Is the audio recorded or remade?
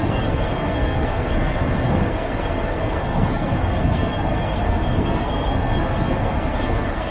remade